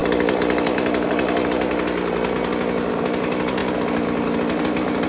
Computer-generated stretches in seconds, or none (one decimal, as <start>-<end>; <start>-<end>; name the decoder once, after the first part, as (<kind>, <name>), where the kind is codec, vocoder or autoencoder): none